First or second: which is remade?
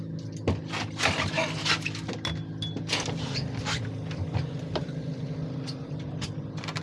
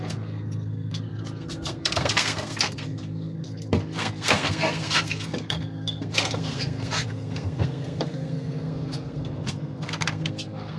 second